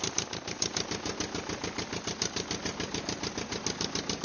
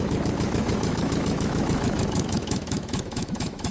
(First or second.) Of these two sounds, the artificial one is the second